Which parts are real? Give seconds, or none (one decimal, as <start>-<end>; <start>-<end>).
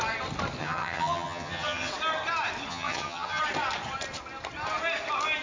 0.0-0.6; 1.9-2.7; 3.4-5.4